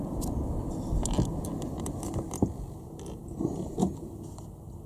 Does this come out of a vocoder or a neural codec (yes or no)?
no